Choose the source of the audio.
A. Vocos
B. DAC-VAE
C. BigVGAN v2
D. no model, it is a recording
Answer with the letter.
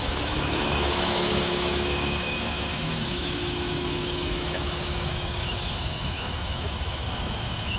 B